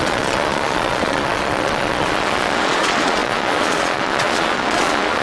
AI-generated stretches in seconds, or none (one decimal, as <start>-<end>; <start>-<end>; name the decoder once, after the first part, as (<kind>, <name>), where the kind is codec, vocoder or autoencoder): 0.0-5.2 (vocoder, Vocos)